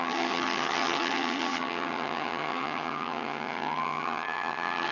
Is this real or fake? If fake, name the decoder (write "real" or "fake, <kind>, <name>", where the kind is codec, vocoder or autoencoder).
fake, vocoder, HiFi-GAN